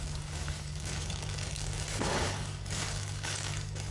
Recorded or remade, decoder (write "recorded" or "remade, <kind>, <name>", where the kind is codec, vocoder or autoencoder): remade, codec, DAC